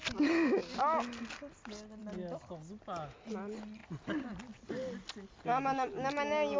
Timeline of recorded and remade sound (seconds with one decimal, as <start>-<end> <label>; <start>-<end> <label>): 0.0-6.6 recorded